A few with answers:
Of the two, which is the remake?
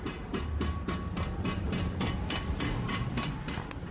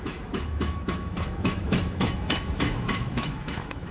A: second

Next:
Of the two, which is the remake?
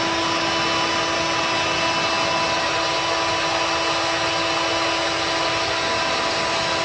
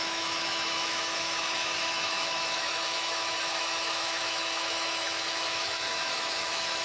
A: second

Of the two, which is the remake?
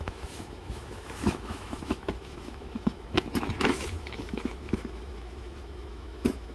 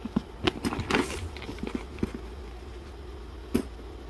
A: first